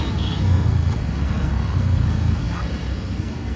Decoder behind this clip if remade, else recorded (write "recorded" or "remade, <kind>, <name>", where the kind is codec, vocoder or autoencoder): remade, codec, SNAC